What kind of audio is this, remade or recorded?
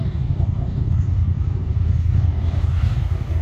remade